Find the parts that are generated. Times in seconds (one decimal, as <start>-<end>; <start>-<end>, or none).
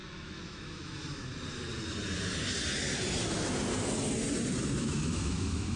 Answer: 0.0-1.3; 4.8-5.8